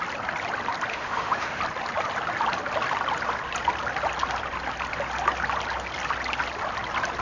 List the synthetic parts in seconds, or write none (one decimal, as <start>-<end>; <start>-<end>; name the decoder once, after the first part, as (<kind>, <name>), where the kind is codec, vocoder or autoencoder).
0.9-1.6 (autoencoder, DAC-VAE)